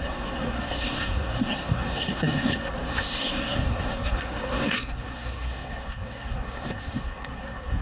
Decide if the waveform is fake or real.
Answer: fake